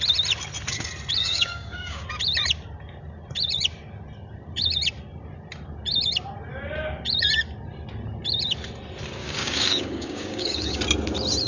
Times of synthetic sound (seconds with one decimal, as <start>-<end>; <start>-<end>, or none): 1.2-2.1; 9.2-10.8